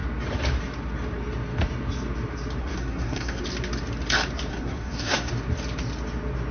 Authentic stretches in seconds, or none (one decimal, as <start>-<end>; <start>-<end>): 0.0-2.6; 3.4-4.5; 5.3-6.5